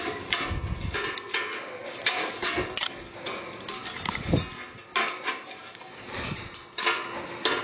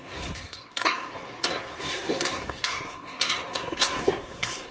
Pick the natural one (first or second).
first